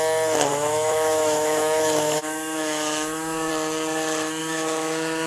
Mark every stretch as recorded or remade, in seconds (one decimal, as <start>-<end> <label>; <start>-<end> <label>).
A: 0.0-0.5 recorded; 0.5-3.5 remade; 3.5-4.4 recorded; 4.4-5.3 remade